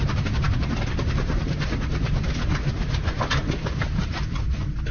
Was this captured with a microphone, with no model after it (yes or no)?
no